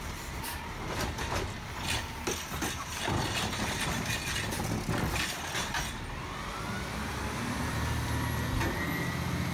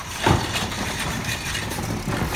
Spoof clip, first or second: second